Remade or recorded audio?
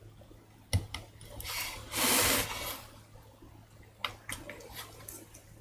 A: recorded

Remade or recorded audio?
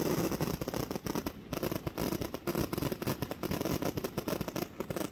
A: recorded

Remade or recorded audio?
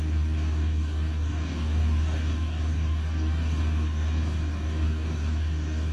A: remade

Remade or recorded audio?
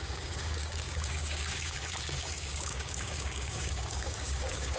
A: remade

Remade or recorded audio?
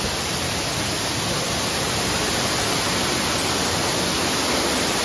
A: recorded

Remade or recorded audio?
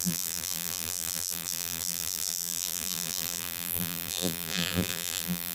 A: remade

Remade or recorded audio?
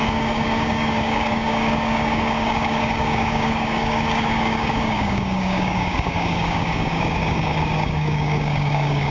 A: remade